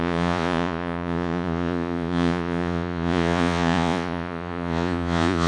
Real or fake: fake